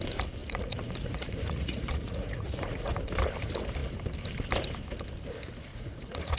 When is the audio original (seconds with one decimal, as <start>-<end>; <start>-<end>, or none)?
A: 0.0-0.4; 2.9-5.7